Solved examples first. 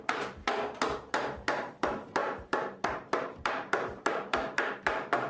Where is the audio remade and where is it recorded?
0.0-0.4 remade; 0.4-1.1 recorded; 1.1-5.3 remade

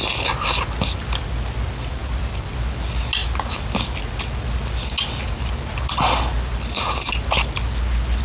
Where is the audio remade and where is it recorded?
0.0-2.0 recorded; 2.0-2.5 remade; 2.5-8.2 recorded

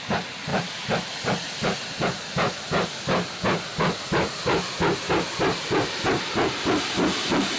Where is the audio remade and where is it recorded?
0.0-7.6 remade

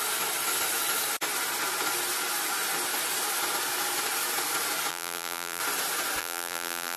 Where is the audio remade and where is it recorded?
0.0-4.9 recorded; 4.9-5.6 remade; 5.6-6.2 recorded; 6.2-7.0 remade

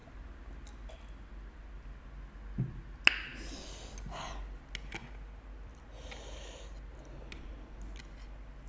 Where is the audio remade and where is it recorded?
0.0-8.7 recorded

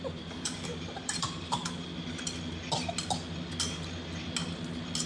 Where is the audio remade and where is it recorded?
0.0-1.6 remade; 1.6-5.1 recorded